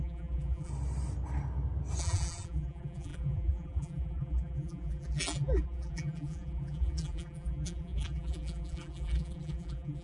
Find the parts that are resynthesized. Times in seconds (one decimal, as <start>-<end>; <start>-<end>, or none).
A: 0.0-0.7; 2.0-10.0